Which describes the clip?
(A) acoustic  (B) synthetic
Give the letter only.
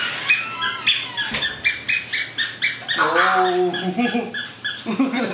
A